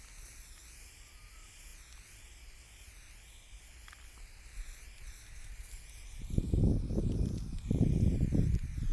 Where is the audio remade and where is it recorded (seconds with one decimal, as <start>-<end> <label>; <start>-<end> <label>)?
0.0-8.9 recorded

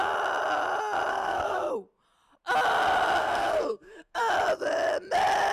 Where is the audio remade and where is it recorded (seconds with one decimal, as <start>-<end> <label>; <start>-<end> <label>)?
0.0-1.1 recorded; 1.1-1.7 remade; 1.7-3.2 recorded; 3.2-4.2 remade; 4.2-5.5 recorded

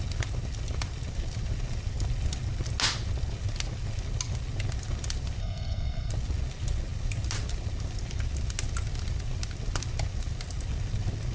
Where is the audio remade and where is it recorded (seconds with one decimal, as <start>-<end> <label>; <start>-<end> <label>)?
0.0-5.4 recorded; 5.4-6.1 remade; 6.1-11.3 recorded

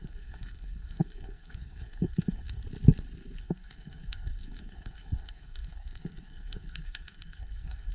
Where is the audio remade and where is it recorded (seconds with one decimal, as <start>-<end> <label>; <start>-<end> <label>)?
0.0-2.6 remade; 2.6-3.4 recorded; 3.4-7.9 remade

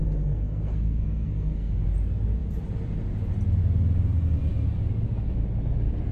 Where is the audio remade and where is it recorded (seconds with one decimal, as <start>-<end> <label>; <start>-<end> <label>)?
0.0-1.7 remade; 1.7-6.1 recorded